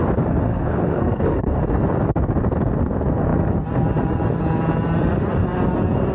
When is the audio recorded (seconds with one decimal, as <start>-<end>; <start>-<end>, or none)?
0.0-0.5; 1.6-6.1